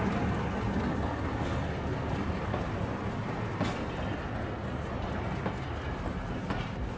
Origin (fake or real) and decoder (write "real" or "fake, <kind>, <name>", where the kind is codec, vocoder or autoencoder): real